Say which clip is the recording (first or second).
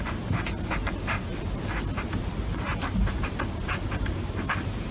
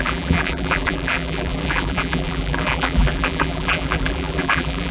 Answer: first